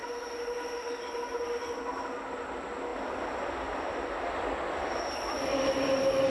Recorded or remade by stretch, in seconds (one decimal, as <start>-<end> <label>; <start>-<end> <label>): 0.0-6.3 recorded